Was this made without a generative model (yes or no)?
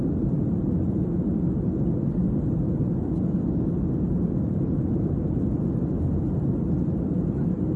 yes